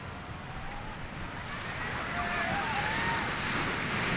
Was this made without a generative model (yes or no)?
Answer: yes